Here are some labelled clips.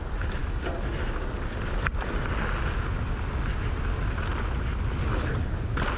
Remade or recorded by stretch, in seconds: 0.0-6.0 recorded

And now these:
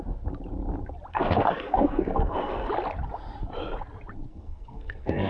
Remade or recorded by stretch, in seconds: 0.0-1.1 recorded; 1.1-2.7 remade; 2.7-4.3 recorded; 4.3-5.3 remade

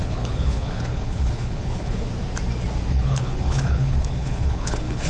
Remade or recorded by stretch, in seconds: 0.0-2.1 remade; 2.1-2.9 recorded; 2.9-5.1 remade

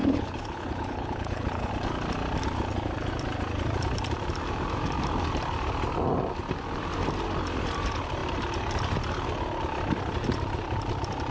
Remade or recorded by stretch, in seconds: 0.0-1.7 remade; 1.7-11.3 recorded

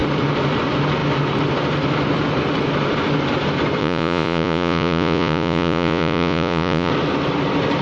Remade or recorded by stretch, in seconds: 0.0-3.8 recorded; 3.8-6.9 remade; 6.9-7.8 recorded

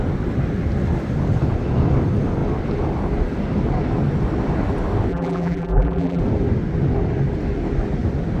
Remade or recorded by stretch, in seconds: 0.0-5.1 recorded; 5.1-6.2 remade; 6.2-8.4 recorded